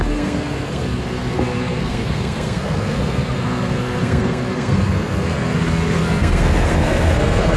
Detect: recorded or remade remade